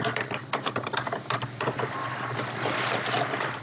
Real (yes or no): yes